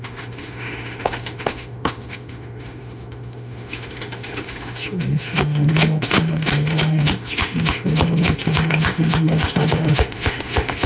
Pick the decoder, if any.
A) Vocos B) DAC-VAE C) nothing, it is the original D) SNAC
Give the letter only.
B